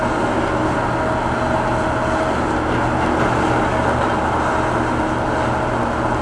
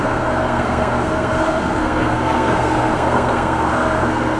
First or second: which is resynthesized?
second